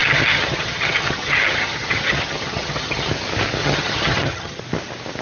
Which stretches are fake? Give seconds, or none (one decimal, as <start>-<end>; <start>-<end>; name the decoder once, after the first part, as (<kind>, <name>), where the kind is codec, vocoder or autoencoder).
0.0-3.1 (vocoder, HiFi-GAN); 3.6-4.6